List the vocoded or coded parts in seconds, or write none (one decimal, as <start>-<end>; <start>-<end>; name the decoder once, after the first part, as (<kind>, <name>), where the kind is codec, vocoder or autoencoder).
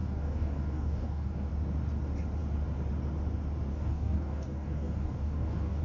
0.0-1.5 (codec, DAC); 3.7-5.8